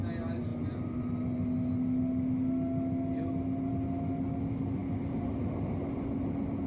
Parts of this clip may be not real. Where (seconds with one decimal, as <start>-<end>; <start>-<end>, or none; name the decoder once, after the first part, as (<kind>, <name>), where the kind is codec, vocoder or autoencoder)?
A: none

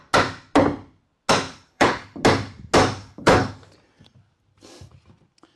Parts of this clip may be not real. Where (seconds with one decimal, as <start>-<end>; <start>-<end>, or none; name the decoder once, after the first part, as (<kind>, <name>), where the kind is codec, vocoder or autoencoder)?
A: 1.5-2.2 (codec, HILCodec); 3.0-3.5

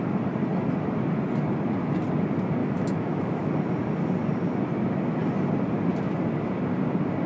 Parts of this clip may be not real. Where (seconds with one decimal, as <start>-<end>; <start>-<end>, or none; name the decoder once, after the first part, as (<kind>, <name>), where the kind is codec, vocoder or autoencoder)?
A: 2.6-3.5 (autoencoder, DAC-VAE)